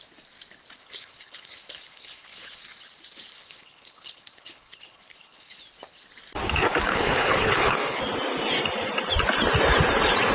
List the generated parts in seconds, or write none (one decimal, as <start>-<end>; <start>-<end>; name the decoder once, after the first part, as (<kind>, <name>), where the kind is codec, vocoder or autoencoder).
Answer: 0.8-2.6 (codec, HILCodec); 3.3-5.6; 6.9-8.0